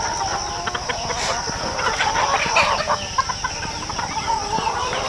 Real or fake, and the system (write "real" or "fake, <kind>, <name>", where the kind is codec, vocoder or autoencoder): real